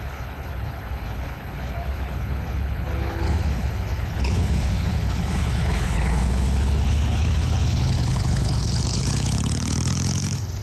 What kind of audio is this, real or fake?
fake